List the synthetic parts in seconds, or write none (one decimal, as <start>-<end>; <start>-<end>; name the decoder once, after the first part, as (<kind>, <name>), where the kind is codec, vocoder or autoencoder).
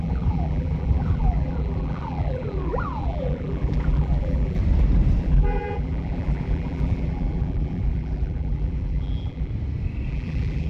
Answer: 0.0-4.6 (vocoder, BigVGAN v2); 5.2-9.5; 10.1-10.7